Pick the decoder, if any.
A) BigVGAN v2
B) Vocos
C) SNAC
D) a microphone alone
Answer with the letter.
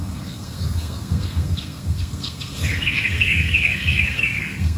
C